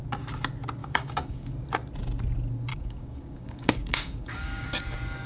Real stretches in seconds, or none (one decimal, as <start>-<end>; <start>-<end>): 0.0-0.8; 1.5-2.7; 4.8-5.3